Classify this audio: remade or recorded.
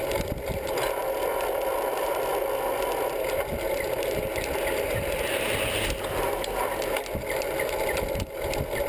recorded